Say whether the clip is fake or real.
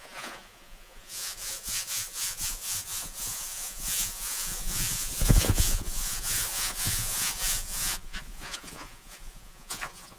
fake